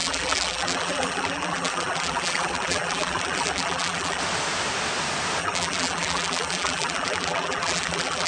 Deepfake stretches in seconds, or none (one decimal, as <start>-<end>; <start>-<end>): 0.0-4.2; 5.4-8.3